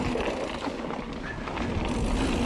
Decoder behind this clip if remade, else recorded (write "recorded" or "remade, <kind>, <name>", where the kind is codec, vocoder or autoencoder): recorded